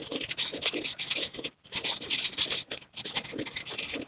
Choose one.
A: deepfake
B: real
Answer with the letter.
B